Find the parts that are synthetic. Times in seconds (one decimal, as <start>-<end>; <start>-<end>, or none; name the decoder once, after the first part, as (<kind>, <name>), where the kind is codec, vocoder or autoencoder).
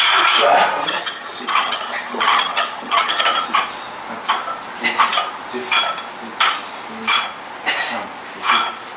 0.8-3.2 (vocoder, HiFi-GAN)